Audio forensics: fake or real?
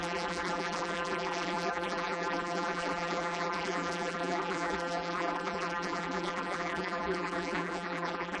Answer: fake